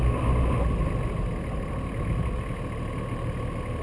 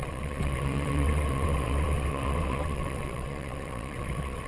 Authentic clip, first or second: first